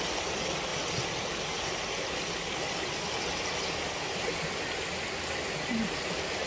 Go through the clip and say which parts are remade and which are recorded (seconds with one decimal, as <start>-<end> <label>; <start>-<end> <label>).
0.0-6.5 recorded